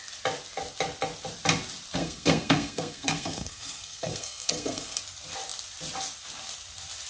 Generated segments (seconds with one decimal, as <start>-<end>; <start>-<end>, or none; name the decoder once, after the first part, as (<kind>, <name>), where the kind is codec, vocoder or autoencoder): 2.0-5.0 (codec, SNAC)